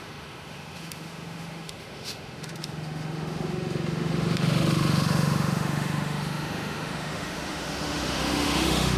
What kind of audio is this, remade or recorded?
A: remade